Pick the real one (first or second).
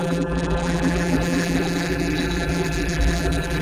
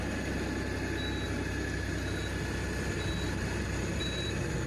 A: second